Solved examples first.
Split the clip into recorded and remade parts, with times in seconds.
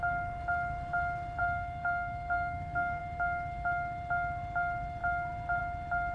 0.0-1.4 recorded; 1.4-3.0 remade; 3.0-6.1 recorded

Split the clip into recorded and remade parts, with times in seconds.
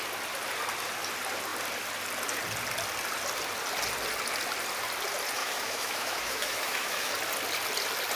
0.0-5.4 recorded; 5.4-7.1 remade; 7.1-8.2 recorded